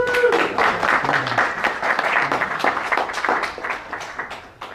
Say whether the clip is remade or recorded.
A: remade